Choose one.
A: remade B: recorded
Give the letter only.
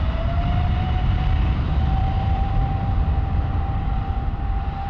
A